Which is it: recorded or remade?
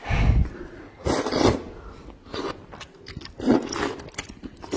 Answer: recorded